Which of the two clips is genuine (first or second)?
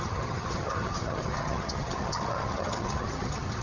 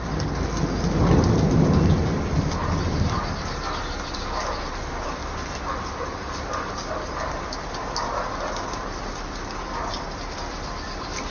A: second